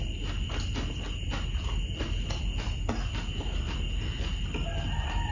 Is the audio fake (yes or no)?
no